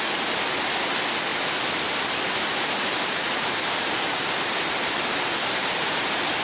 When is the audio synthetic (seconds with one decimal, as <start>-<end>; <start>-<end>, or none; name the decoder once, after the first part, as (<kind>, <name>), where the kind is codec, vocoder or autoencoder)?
none